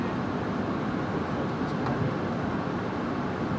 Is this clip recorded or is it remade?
recorded